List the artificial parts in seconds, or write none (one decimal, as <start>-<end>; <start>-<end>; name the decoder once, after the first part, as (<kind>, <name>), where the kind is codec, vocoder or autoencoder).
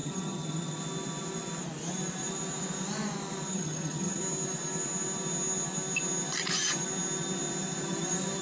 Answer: 0.0-0.8 (vocoder, HiFi-GAN); 3.5-4.2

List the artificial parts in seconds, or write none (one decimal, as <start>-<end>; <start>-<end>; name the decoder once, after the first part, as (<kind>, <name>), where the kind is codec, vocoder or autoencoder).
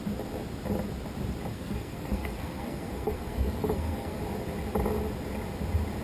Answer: 1.5-4.2 (codec, SNAC)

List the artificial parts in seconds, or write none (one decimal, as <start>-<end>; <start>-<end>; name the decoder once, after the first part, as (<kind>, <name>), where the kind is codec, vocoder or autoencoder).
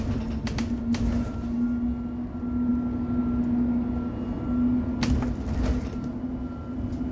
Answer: none